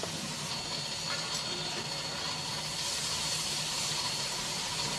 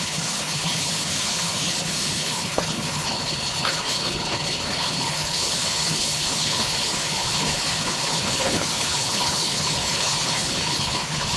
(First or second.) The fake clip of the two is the second